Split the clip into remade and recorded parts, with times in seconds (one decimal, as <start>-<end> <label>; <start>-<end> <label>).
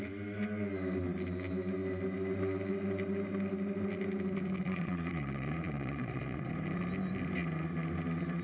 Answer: 0.0-4.6 recorded; 4.6-6.5 remade; 6.5-8.4 recorded